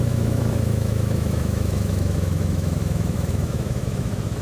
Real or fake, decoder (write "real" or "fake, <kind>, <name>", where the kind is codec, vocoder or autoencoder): fake, autoencoder, DAC-VAE